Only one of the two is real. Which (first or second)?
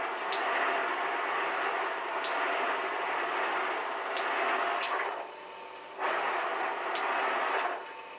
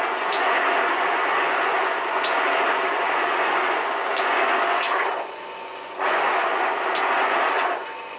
first